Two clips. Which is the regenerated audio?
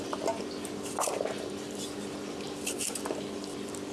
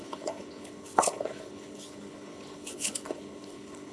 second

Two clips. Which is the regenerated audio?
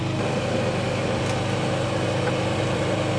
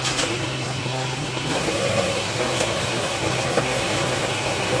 second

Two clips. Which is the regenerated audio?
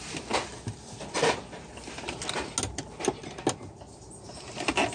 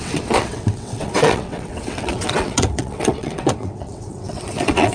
second